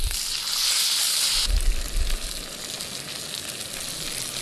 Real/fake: real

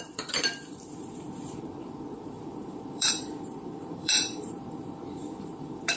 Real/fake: fake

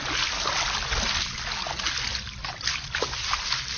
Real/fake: real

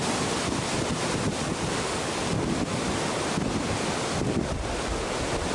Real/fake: real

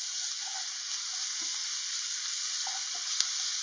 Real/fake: real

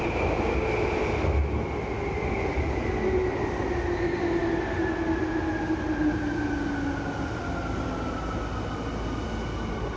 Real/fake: real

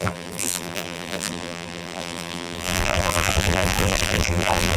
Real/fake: fake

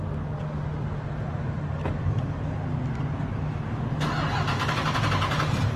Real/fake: real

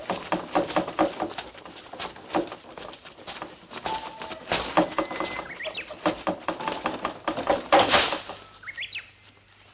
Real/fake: real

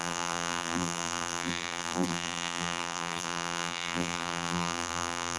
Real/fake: fake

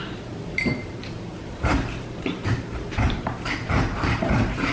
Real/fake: fake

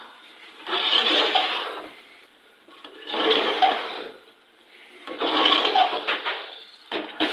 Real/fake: fake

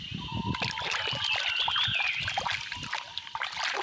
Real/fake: real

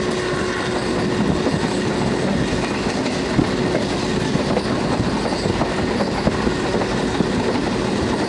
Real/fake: real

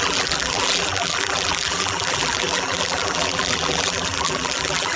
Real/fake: fake